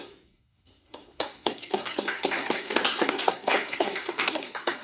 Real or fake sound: fake